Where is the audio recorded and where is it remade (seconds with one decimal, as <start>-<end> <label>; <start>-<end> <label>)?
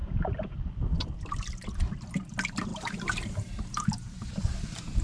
0.0-0.7 remade; 0.7-2.7 recorded; 2.7-4.3 remade; 4.3-5.0 recorded